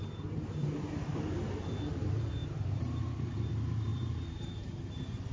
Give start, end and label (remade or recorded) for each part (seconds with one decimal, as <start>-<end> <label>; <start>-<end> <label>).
0.0-1.1 remade; 1.1-2.4 recorded; 2.4-3.5 remade; 3.5-3.9 recorded; 3.9-4.8 remade; 4.8-5.3 recorded